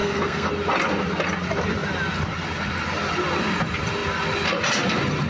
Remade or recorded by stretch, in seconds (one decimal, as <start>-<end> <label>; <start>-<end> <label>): 0.0-0.5 remade; 0.5-5.3 recorded